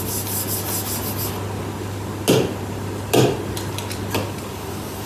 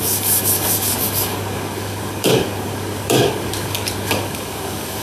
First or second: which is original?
first